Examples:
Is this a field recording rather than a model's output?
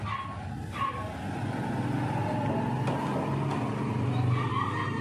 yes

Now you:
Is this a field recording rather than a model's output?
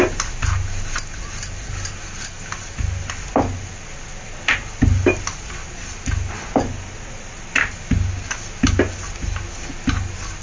yes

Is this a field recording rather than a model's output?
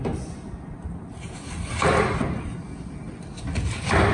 yes